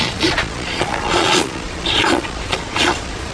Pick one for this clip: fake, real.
fake